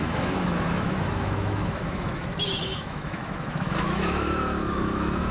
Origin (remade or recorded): remade